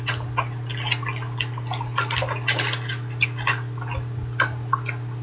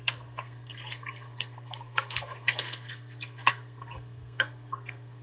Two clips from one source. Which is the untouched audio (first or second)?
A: first